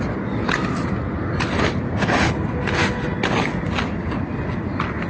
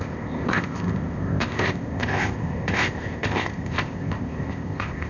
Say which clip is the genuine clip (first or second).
first